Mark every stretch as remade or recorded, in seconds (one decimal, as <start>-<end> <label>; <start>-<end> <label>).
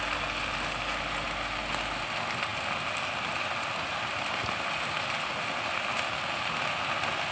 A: 0.0-7.3 recorded